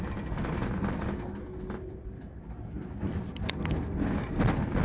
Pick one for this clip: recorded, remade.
recorded